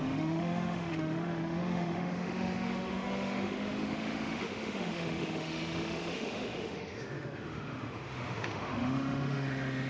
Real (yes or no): no